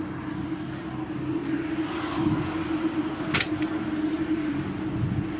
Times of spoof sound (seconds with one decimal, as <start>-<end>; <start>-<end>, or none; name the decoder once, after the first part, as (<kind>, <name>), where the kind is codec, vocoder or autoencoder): none